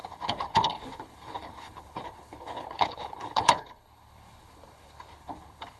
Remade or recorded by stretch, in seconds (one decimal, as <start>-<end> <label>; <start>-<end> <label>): 0.0-5.8 remade